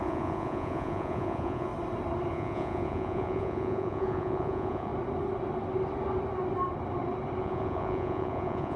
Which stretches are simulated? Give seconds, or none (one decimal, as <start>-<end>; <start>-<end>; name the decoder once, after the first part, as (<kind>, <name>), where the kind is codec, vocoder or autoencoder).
0.0-1.7 (vocoder, Vocos); 2.3-4.9; 7.4-8.8